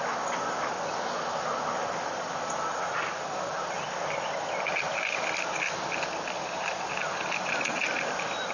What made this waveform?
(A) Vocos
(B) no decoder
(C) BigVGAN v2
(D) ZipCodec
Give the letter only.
B